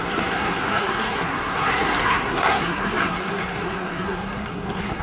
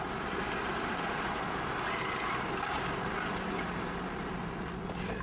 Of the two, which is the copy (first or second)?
first